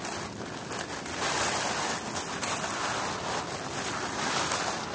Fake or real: real